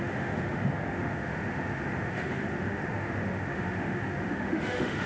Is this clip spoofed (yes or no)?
yes